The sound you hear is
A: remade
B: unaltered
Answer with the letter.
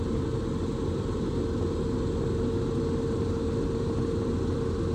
B